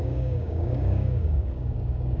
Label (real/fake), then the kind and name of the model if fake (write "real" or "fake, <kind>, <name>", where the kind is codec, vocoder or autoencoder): fake, codec, DAC